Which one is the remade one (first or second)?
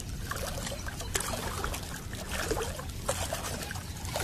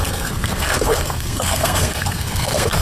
second